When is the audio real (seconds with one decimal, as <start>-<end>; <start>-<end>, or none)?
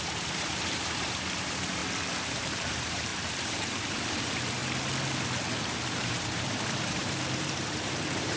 1.8-2.5; 4.6-5.8